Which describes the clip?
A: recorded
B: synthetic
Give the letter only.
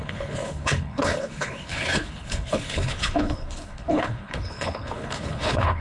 B